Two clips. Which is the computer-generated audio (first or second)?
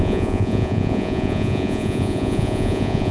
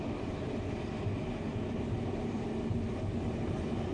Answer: first